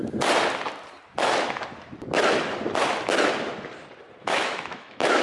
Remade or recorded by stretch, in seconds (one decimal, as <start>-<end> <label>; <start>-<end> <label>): 0.0-4.2 recorded; 4.2-5.2 remade